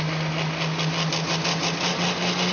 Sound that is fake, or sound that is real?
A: real